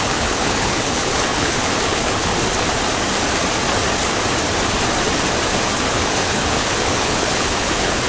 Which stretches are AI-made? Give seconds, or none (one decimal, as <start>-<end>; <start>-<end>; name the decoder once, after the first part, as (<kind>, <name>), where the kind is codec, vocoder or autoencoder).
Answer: 0.0-2.3 (codec, HILCodec); 5.9-8.1